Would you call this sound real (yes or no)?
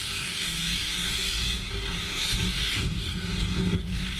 no